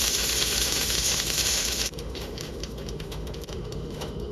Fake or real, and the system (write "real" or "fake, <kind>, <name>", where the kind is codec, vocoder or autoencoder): fake, autoencoder, DAC-VAE